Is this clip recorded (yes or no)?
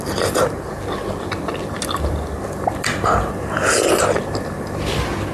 yes